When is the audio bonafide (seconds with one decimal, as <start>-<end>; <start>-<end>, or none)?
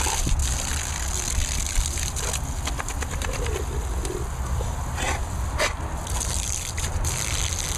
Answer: 0.0-7.8